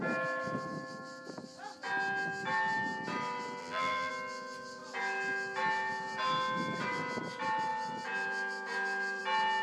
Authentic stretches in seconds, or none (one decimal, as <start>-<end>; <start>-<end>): 0.0-3.6; 4.1-9.6